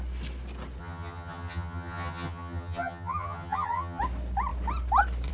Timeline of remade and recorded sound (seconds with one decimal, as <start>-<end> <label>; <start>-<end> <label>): 0.0-0.8 recorded; 0.8-4.0 remade; 4.0-5.3 recorded